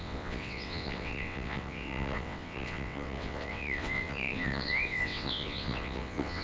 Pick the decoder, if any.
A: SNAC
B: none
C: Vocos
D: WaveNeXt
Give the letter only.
D